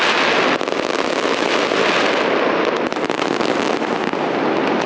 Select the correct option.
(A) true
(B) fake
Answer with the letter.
A